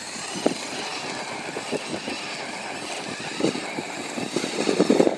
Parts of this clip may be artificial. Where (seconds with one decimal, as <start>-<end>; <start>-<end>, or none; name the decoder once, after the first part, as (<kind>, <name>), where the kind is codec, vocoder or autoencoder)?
none

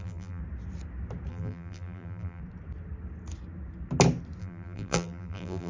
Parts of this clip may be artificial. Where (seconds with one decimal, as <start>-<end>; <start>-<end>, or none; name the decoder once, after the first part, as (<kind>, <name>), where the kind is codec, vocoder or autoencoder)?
0.0-0.4 (vocoder, BigVGAN v2); 1.3-2.4; 4.4-5.7

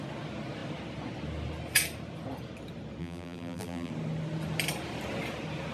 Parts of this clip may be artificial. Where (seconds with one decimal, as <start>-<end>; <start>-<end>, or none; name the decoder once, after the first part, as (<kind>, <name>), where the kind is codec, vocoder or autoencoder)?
3.0-3.9 (vocoder, BigVGAN v2)

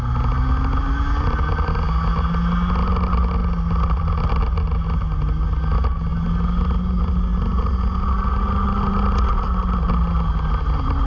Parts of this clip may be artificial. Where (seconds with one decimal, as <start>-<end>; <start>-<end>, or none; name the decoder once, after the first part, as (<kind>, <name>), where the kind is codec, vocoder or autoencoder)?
none

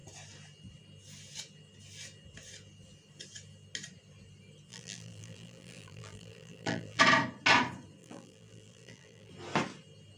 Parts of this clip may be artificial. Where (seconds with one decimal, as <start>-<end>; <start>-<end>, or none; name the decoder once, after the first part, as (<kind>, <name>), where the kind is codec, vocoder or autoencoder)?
4.7-7.0 (vocoder, BigVGAN v2); 8.0-9.3

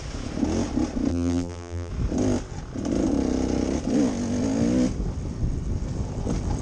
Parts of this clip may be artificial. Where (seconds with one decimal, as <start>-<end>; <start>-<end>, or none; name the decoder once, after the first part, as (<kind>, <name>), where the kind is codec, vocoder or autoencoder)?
1.1-1.9 (vocoder, BigVGAN v2)

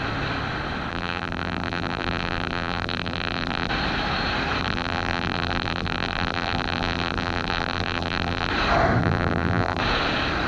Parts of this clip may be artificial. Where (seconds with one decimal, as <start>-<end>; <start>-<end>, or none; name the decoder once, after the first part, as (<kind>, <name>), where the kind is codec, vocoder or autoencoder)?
0.9-3.7 (vocoder, BigVGAN v2); 4.6-8.5; 9.0-9.8